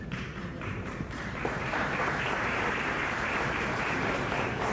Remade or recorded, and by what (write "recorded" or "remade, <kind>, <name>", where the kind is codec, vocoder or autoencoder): remade, vocoder, BigVGAN v2